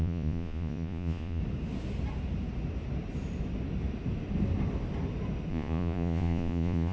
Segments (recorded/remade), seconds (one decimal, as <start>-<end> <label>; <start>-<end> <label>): 0.0-1.4 remade; 1.4-5.5 recorded; 5.5-6.9 remade